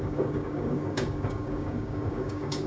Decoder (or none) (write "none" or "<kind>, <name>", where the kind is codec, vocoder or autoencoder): codec, DAC